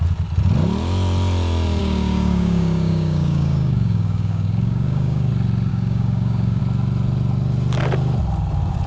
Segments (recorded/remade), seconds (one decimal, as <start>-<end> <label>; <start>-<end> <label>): 0.0-1.8 recorded; 1.8-5.3 remade; 5.3-5.7 recorded; 5.7-6.6 remade; 6.6-8.9 recorded